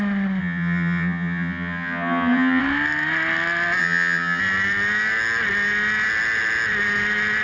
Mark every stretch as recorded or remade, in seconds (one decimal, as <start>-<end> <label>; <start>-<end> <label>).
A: 0.0-0.4 recorded; 0.4-2.6 remade; 2.6-3.8 recorded; 3.8-4.4 remade; 4.4-7.4 recorded